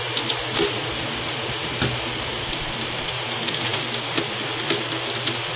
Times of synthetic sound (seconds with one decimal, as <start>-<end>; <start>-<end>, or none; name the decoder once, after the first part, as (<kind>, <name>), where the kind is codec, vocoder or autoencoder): 2.5-3.1 (vocoder, BigVGAN v2)